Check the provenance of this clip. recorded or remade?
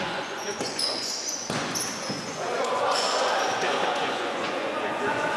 remade